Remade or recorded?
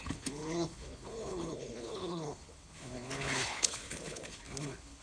remade